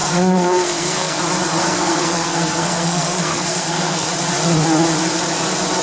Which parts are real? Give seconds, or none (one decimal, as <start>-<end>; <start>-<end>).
1.2-1.6; 4.1-5.8

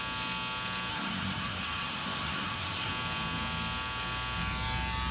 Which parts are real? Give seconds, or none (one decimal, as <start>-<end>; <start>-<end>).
0.0-0.9; 2.9-5.1

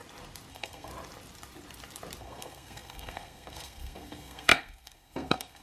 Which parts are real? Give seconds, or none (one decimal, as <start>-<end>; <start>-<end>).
0.0-0.5; 0.9-2.2

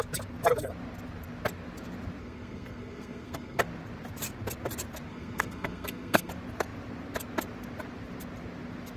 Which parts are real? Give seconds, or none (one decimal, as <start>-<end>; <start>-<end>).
0.0-2.2; 3.6-5.1; 6.3-9.0

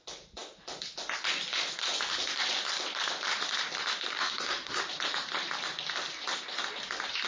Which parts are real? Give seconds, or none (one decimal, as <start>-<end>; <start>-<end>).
0.0-4.1; 4.8-7.3

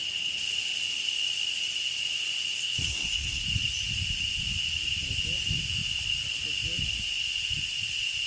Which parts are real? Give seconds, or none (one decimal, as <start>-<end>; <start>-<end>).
0.0-2.6; 3.4-8.3